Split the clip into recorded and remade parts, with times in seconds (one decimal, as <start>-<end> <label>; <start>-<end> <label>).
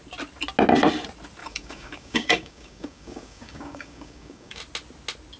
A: 0.0-1.4 recorded; 1.4-4.6 remade; 4.6-5.4 recorded